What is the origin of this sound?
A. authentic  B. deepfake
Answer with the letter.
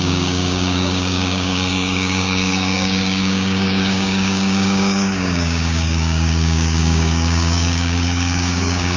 B